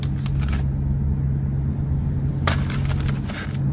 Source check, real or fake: real